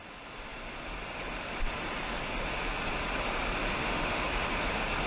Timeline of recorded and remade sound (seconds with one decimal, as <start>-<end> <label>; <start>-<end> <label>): 0.0-3.8 recorded; 3.8-4.4 remade; 4.4-5.1 recorded